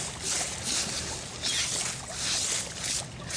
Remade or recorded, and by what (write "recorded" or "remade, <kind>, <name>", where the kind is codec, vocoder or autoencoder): recorded